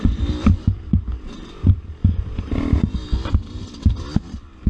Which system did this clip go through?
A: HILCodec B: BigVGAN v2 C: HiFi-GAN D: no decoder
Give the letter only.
D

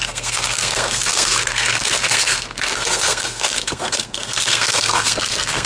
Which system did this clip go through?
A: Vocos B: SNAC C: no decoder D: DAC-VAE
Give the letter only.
B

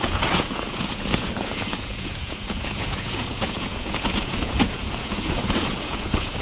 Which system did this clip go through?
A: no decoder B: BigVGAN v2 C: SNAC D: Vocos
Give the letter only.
D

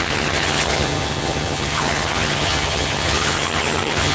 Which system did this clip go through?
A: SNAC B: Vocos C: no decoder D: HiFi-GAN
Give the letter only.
D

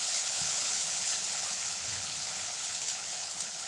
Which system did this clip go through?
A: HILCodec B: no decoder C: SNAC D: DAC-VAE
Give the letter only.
A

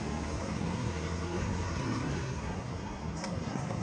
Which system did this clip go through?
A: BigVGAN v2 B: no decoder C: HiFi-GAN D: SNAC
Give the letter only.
D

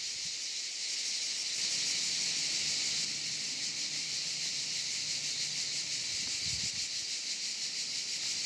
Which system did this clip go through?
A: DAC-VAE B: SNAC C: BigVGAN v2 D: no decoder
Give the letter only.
D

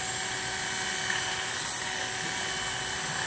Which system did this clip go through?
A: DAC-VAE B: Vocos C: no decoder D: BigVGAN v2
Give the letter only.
C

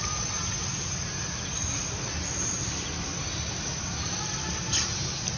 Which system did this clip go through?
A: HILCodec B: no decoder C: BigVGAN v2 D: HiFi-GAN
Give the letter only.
B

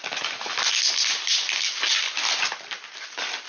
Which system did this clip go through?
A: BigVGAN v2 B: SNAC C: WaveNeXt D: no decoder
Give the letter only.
D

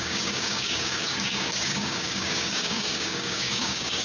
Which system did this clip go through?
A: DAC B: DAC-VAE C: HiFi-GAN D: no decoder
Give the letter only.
A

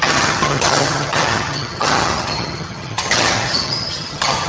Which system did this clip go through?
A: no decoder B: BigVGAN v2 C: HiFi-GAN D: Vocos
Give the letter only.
C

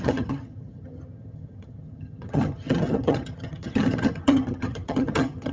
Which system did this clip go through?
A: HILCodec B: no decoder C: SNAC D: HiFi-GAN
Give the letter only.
D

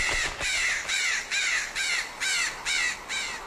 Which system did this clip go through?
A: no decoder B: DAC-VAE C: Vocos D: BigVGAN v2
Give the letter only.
A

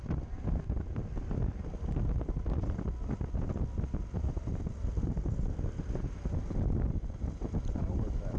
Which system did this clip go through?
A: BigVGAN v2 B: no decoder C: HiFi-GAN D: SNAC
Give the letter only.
A